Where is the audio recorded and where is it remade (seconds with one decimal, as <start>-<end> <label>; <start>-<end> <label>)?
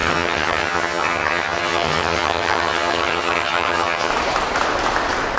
0.0-4.1 remade; 4.1-5.4 recorded